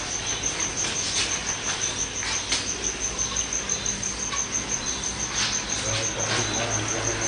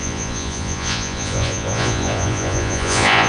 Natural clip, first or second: first